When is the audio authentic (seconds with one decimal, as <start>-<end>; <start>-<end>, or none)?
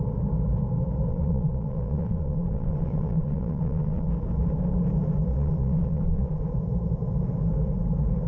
0.0-1.1; 4.1-5.3; 6.4-8.3